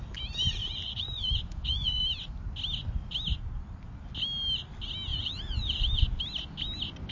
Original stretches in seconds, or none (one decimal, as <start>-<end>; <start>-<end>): 0.0-0.6; 2.0-5.1; 6.2-7.1